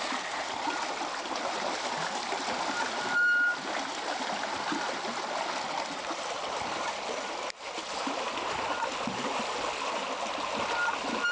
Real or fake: real